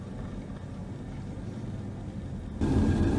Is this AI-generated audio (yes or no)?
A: no